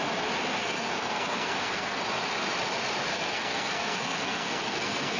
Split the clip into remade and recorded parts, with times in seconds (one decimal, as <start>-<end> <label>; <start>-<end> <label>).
0.0-0.6 recorded; 0.6-2.0 remade; 2.0-3.1 recorded; 3.1-5.2 remade